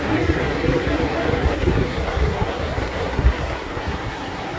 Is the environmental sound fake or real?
fake